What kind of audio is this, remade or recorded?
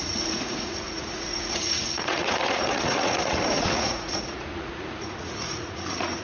remade